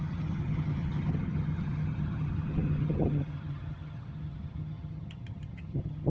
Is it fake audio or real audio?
fake